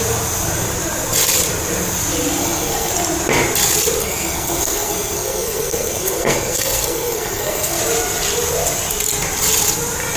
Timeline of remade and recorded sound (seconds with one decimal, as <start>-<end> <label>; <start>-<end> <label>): 0.0-2.4 recorded; 2.4-2.9 remade; 2.9-4.0 recorded; 4.0-7.8 remade; 7.8-10.2 recorded